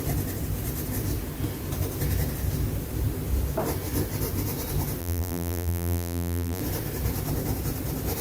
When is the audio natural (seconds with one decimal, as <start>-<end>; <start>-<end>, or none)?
0.0-5.0; 6.6-8.2